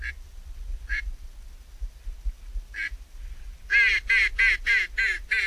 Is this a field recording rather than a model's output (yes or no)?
yes